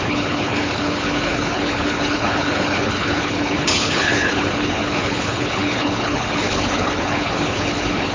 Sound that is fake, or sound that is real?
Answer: fake